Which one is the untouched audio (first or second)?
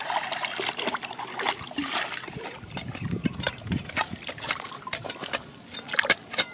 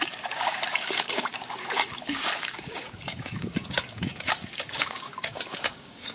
first